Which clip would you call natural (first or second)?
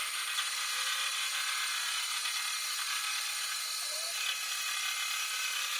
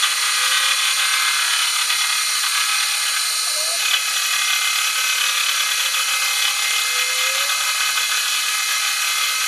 second